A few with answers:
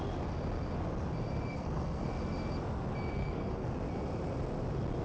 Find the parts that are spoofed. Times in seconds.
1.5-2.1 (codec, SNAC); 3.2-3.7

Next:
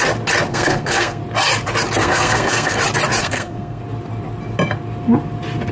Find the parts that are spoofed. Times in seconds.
0.5-1.2 (codec, SNAC); 2.0-2.8; 3.2-3.8

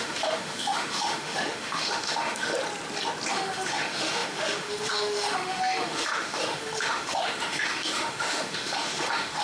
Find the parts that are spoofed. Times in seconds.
0.0-2.5 (autoencoder, DAC-VAE); 3.3-9.4

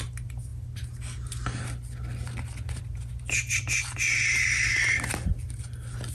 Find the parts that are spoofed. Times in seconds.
none

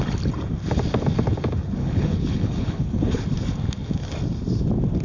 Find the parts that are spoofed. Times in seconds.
1.8-3.2 (codec, HILCodec)

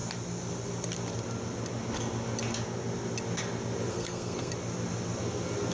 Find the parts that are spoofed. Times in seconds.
3.9-4.5 (codec, SNAC)